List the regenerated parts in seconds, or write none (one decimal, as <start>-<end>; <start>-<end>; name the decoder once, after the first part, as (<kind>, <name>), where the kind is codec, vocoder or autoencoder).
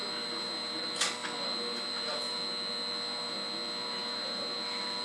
none